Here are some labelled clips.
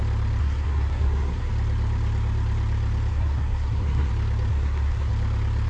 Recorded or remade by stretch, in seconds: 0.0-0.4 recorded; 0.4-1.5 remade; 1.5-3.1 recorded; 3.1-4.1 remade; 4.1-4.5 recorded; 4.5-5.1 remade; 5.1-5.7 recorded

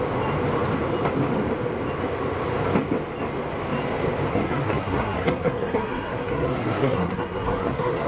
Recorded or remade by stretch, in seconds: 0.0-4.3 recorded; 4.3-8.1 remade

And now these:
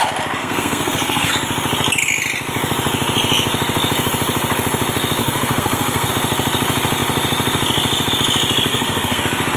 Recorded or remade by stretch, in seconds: 0.0-0.4 recorded; 0.4-1.3 remade; 1.3-5.2 recorded; 5.2-6.1 remade; 6.1-8.7 recorded; 8.7-9.2 remade; 9.2-9.6 recorded

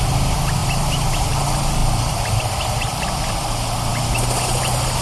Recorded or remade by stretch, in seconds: 0.0-5.0 recorded

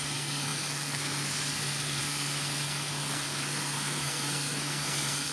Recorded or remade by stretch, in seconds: 0.0-5.3 remade

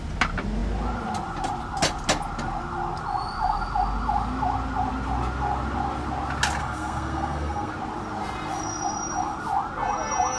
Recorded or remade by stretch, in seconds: 0.0-6.6 recorded; 6.6-7.7 remade; 7.7-10.4 recorded

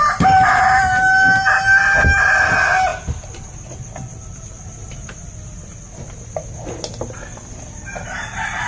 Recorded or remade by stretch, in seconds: 0.0-8.7 recorded